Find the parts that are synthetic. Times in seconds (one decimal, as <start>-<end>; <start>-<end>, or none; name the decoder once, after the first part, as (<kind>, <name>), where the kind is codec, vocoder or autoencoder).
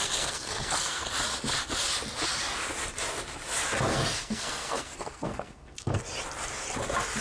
0.0-1.1 (codec, SNAC); 3.9-6.0